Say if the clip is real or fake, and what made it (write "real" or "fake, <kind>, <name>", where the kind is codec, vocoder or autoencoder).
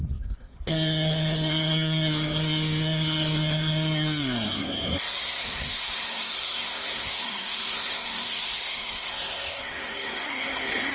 fake, codec, SNAC